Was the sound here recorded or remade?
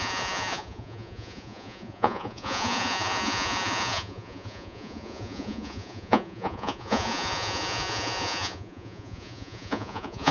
remade